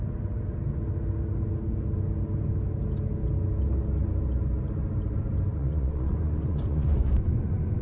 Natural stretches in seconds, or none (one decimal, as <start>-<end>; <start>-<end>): 0.0-5.5

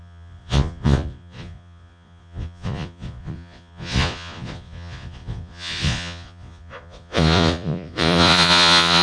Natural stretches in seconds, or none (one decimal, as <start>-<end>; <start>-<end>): none

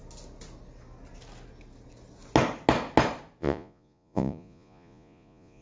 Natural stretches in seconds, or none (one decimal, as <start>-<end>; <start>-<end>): 0.0-3.4

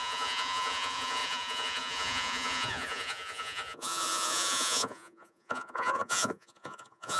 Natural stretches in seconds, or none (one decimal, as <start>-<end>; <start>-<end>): none

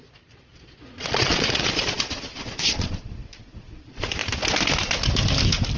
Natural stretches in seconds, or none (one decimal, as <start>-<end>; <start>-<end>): 4.2-5.8

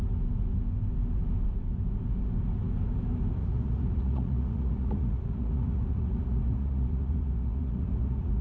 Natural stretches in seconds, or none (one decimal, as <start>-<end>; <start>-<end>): 0.0-3.4